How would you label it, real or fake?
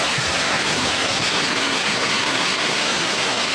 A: fake